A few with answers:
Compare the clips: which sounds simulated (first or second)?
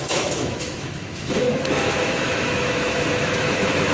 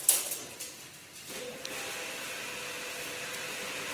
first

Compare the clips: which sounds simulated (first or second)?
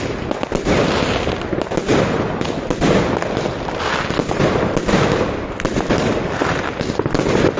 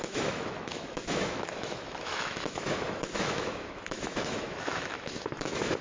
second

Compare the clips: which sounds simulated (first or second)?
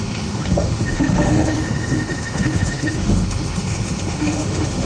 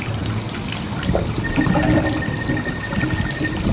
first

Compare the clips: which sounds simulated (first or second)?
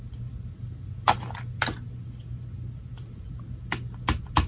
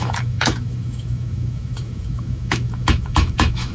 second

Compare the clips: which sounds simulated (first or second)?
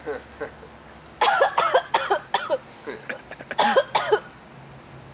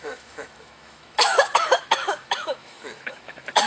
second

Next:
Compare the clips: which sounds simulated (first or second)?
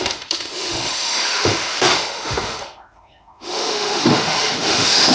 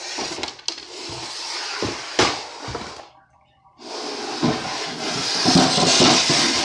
first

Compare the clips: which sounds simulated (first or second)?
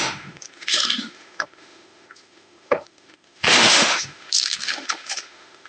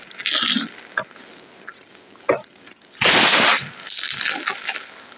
first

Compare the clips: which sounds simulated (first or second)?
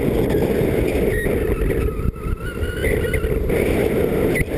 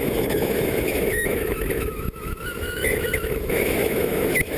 second